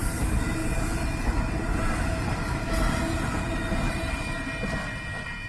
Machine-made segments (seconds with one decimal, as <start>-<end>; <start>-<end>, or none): 0.0-5.5